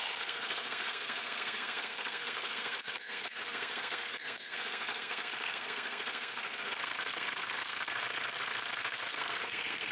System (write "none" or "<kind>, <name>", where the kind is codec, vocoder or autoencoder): codec, SNAC